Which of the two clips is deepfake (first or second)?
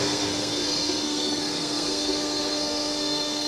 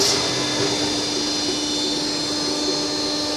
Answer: first